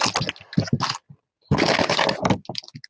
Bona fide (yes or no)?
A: yes